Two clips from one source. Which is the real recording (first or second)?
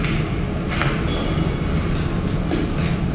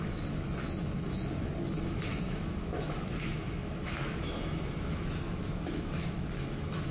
first